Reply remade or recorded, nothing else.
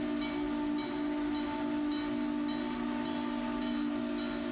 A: recorded